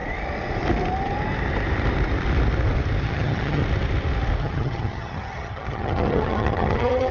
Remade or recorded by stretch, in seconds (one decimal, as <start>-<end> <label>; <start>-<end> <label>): 0.0-3.0 recorded; 3.0-3.6 remade; 3.6-4.4 recorded; 4.4-7.1 remade